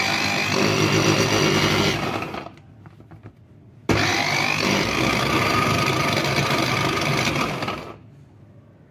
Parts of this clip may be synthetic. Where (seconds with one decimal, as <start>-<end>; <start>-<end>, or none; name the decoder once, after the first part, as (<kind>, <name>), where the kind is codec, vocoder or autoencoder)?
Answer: 4.1-6.7 (vocoder, BigVGAN v2)